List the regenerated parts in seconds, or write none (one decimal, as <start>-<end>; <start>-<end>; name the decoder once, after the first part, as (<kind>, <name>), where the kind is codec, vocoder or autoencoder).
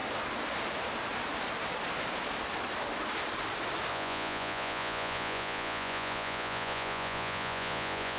3.9-8.2 (vocoder, Vocos)